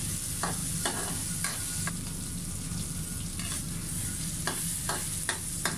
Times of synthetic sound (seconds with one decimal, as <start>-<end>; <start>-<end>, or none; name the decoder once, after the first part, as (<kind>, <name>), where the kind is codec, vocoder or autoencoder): none